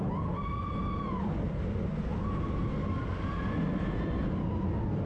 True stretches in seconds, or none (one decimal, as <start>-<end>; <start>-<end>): 0.0-5.1